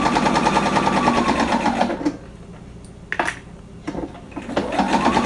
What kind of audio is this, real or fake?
real